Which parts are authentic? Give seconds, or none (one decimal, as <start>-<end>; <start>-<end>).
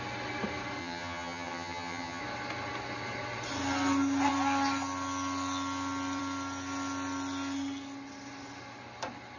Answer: 0.0-0.8; 2.2-9.4